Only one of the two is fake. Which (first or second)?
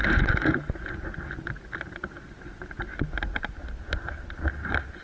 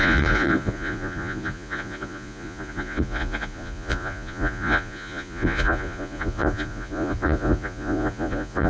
second